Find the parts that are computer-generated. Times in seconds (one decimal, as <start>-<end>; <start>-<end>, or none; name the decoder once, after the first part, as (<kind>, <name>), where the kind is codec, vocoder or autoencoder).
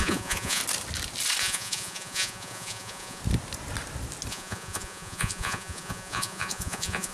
0.0-0.6 (vocoder, Vocos); 1.4-3.2; 4.3-7.1